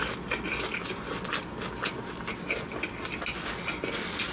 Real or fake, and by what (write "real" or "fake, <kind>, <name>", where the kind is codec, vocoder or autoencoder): real